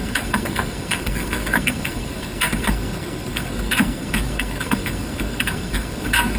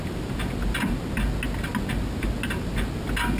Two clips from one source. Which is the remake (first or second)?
first